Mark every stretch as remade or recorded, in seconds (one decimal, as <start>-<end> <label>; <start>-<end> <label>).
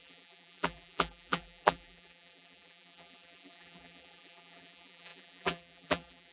0.0-6.3 remade